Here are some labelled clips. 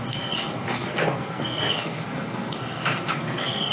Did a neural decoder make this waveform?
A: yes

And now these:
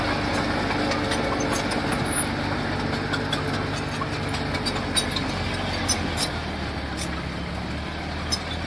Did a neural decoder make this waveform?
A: no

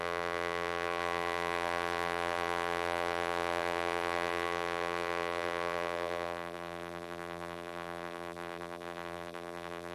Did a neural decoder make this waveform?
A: yes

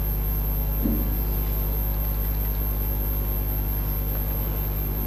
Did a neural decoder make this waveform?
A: no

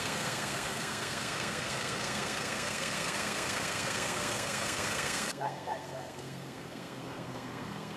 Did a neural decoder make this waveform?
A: yes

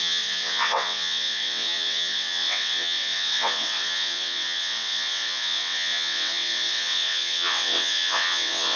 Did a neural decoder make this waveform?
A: yes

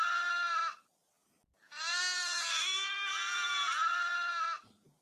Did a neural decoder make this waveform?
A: no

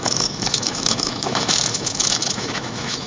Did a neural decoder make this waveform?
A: yes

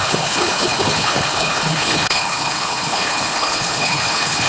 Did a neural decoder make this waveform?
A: yes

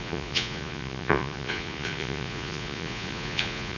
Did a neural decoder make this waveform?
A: yes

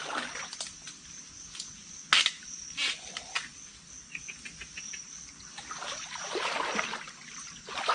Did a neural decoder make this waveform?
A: no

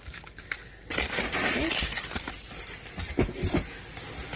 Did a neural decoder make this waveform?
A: no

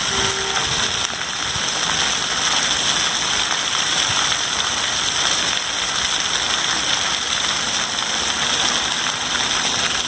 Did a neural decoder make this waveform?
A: no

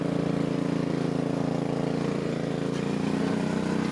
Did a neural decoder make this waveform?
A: no